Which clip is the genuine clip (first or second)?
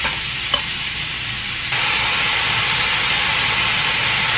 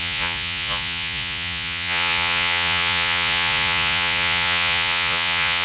first